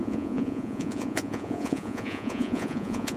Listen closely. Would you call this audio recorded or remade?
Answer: remade